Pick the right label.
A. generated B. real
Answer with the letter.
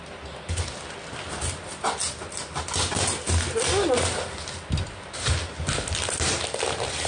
B